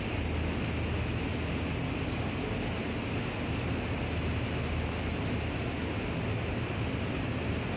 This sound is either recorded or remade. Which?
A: recorded